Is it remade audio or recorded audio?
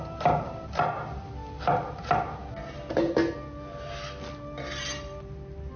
recorded